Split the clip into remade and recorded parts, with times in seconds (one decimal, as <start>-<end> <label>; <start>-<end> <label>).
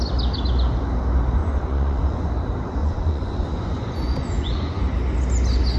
0.0-1.4 recorded; 1.4-2.3 remade; 2.3-2.8 recorded; 2.8-4.8 remade; 4.8-5.8 recorded